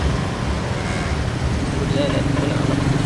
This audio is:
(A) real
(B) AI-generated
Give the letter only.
A